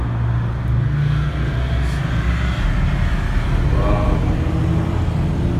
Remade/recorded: recorded